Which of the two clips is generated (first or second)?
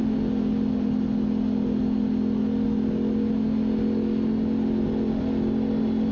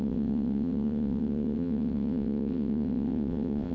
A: second